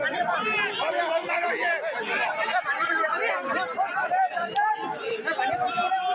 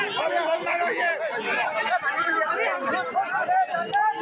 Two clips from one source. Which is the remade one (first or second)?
first